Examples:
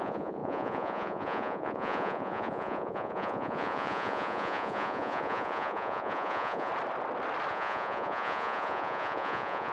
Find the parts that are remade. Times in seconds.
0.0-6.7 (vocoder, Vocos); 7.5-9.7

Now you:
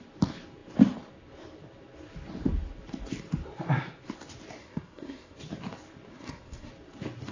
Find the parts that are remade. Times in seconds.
4.6-5.4 (codec, SNAC); 6.1-6.7